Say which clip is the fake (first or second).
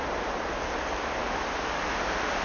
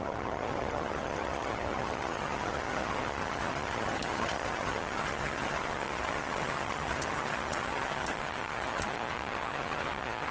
second